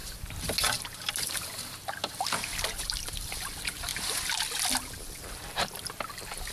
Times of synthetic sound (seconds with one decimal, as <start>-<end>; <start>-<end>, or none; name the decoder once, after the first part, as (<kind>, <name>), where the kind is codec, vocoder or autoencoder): none